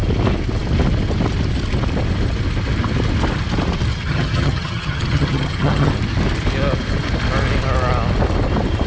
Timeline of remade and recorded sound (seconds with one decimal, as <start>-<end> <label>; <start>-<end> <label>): 0.0-3.9 recorded; 3.9-5.9 remade; 5.9-8.9 recorded